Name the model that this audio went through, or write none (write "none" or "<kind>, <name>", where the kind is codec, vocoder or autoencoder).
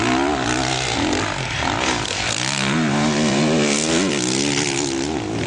none